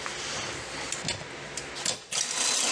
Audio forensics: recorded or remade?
recorded